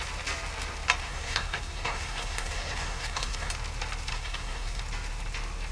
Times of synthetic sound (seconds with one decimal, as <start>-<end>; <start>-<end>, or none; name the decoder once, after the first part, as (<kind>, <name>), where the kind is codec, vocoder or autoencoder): 1.0-3.5 (codec, SNAC); 4.1-4.8